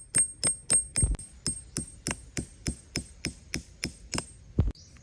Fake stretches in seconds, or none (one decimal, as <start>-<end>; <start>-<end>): none